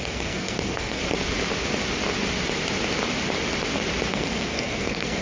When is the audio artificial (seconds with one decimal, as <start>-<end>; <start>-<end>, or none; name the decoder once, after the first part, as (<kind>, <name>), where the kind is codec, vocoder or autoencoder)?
0.0-1.0 (codec, SNAC); 4.1-5.2